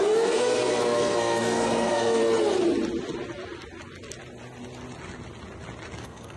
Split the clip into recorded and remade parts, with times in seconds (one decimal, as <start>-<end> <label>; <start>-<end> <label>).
0.0-2.2 remade; 2.2-6.0 recorded; 6.0-6.4 remade